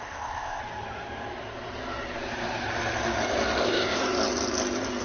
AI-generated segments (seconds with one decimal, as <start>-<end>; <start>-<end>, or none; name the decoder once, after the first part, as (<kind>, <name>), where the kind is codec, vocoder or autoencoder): 0.0-0.6 (codec, ZipCodec); 3.6-4.0